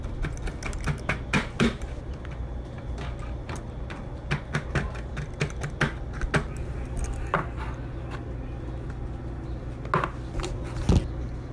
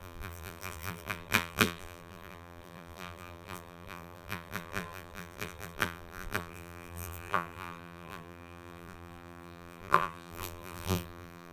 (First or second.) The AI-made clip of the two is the second